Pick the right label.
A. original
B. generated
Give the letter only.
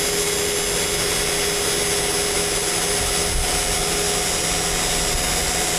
A